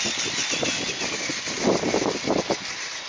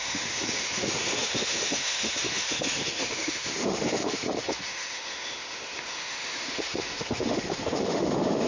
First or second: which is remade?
second